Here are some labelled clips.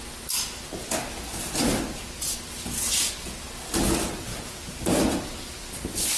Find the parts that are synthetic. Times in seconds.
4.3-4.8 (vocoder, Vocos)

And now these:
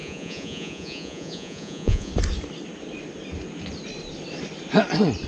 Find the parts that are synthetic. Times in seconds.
0.0-2.1 (vocoder, Vocos)

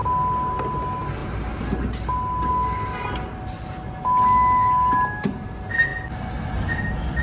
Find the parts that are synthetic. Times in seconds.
none

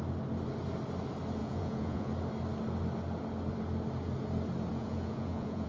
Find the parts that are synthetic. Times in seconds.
1.4-2.1 (vocoder, Vocos); 4.7-5.7

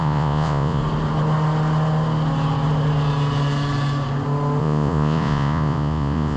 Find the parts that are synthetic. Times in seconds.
0.0-0.8 (vocoder, Vocos); 4.6-6.4